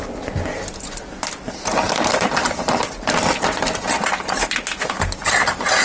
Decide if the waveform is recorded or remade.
recorded